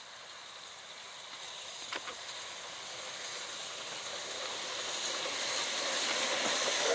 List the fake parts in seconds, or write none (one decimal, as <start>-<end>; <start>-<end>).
0.0-1.9; 5.5-6.9